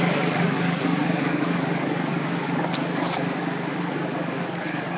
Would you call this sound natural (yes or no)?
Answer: no